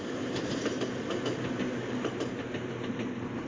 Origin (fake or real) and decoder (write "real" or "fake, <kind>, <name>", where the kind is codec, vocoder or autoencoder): real